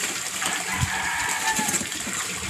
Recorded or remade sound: recorded